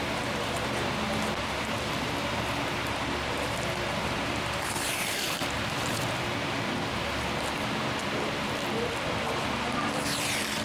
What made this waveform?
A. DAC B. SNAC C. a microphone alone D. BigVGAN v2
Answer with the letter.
D